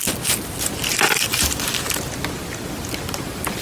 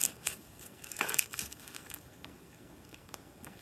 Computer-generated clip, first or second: second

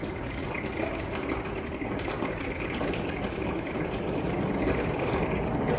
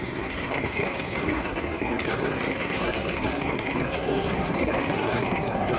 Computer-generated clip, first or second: second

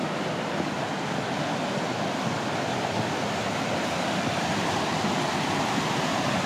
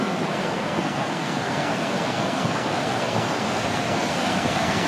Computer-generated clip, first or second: second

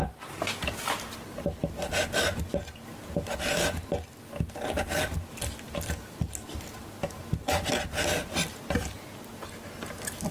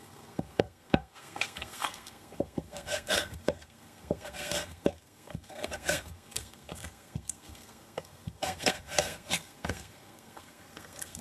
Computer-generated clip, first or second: second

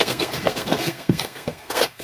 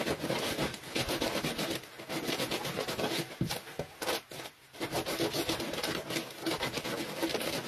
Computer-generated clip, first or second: first